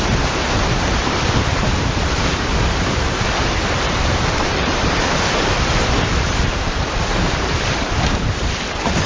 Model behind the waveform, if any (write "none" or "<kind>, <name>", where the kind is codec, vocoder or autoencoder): vocoder, BigVGAN v2